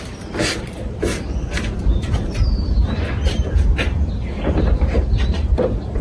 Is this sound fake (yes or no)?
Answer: yes